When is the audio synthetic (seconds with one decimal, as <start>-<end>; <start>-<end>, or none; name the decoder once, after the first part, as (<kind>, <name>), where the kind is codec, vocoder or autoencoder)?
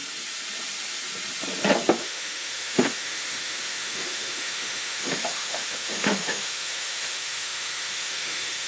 2.0-8.7 (autoencoder, DAC-VAE)